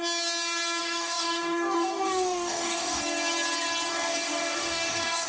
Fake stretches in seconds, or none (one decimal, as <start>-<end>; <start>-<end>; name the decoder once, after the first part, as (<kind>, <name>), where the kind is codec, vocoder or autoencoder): 0.8-3.0 (codec, DAC); 3.9-5.3